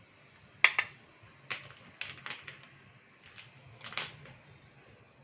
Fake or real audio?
real